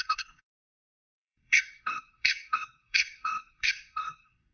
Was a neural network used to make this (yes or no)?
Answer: yes